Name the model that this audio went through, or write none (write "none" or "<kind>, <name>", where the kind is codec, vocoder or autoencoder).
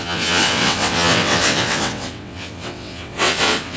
vocoder, WaveNeXt